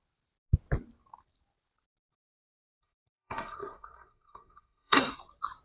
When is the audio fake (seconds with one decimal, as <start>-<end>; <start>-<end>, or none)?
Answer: 2.1-5.1

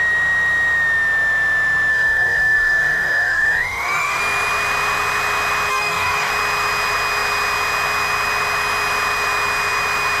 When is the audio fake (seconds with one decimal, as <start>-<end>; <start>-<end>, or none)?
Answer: 1.9-4.2; 5.7-6.3

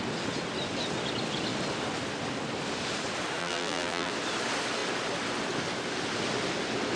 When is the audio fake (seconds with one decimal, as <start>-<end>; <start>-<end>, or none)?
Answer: 3.4-4.1